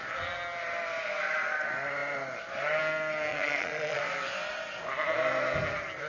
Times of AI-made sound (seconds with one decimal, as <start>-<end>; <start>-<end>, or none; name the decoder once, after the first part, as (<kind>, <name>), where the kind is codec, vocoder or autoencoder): 3.3-4.0 (vocoder, Vocos)